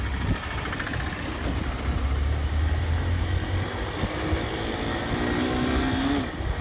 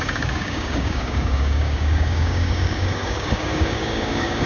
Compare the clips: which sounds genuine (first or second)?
first